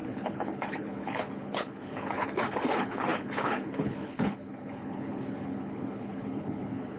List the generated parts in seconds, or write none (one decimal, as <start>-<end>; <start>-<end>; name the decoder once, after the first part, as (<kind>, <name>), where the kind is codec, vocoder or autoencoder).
0.0-7.0 (codec, HILCodec)